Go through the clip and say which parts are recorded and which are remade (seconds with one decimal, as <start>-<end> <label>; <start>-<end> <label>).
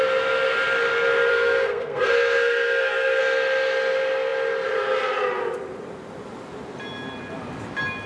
0.0-1.3 recorded; 1.3-3.2 remade; 3.2-8.1 recorded